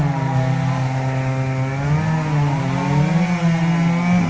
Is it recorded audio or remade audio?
recorded